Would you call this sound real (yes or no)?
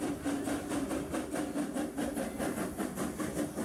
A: yes